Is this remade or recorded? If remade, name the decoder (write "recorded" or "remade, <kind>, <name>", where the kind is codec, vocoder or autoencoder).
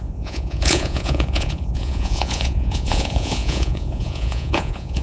remade, vocoder, Vocos